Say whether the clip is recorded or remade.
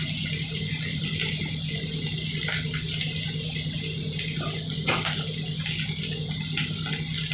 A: recorded